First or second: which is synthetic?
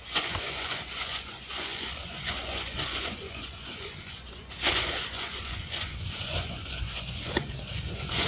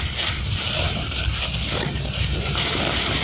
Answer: first